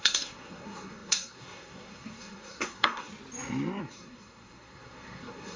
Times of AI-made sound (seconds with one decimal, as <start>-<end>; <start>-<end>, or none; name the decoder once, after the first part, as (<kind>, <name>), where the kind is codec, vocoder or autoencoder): 0.0-3.1 (codec, SNAC); 3.8-5.6